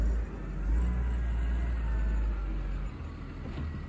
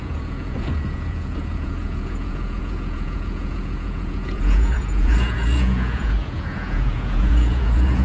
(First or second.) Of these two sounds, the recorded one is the first